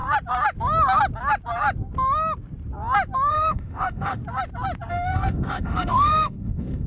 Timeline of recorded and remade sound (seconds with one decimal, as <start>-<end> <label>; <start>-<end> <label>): 0.0-3.3 recorded; 3.3-4.2 remade; 4.2-4.9 recorded; 4.9-6.9 remade